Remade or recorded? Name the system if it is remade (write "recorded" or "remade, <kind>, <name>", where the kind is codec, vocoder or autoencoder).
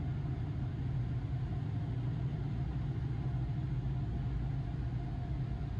recorded